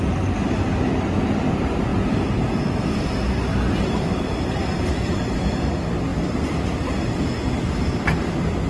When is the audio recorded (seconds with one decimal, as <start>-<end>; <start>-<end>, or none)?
0.0-3.5; 4.4-8.7